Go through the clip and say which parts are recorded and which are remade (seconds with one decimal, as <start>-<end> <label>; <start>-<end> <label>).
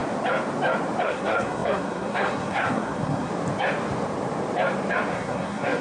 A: 0.0-1.0 recorded; 1.0-3.3 remade; 3.3-5.1 recorded; 5.1-5.8 remade